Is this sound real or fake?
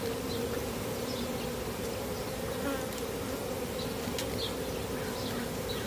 real